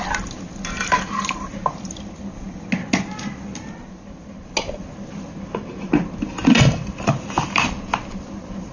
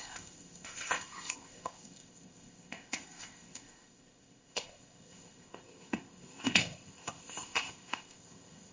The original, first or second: first